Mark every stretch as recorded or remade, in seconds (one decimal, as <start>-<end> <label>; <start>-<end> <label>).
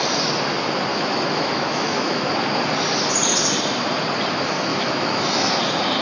0.0-0.9 recorded; 0.9-2.3 remade; 2.3-4.7 recorded; 4.7-5.5 remade; 5.5-6.0 recorded